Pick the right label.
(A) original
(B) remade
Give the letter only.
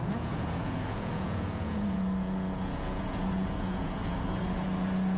B